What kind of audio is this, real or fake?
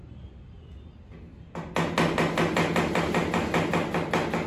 real